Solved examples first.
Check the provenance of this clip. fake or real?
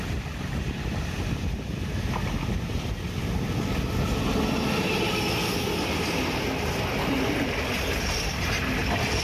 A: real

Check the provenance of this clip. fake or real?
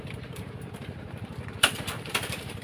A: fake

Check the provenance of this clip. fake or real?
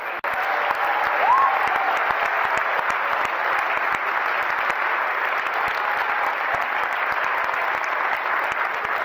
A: real